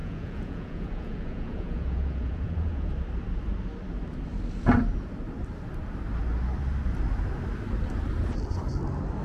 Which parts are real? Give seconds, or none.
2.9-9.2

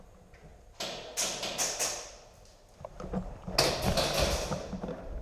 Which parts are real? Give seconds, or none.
0.0-5.2

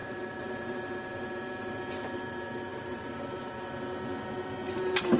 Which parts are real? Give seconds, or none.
0.8-2.7; 3.4-5.2

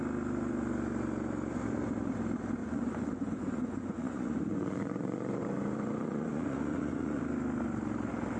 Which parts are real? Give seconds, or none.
0.0-2.6; 7.2-8.4

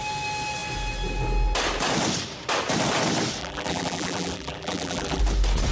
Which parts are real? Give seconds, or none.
0.0-3.4; 5.2-5.7

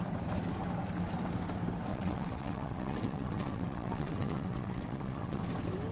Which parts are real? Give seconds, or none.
0.0-1.9; 5.4-5.9